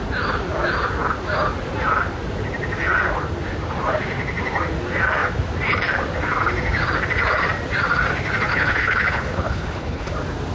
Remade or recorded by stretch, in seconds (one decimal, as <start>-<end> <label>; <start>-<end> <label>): 0.0-8.5 recorded; 8.5-10.1 remade; 10.1-10.5 recorded